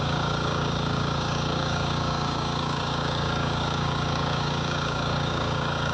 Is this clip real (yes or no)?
no